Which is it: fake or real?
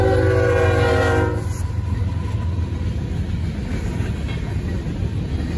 real